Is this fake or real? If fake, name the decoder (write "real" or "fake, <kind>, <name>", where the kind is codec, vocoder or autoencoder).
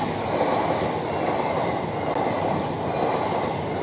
real